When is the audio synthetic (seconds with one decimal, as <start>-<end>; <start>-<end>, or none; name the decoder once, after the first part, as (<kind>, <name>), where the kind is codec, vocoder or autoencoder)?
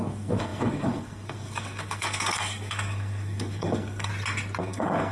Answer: 0.0-4.1 (codec, SNAC); 4.6-5.1